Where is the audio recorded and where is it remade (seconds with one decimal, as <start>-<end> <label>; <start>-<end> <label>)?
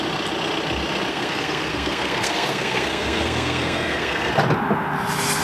0.0-1.1 recorded; 1.1-4.3 remade; 4.3-5.4 recorded